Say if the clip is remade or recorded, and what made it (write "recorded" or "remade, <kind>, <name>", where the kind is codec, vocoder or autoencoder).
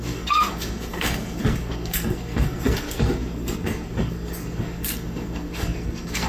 remade, codec, SNAC